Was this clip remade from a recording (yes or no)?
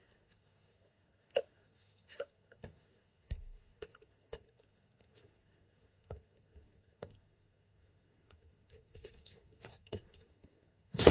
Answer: yes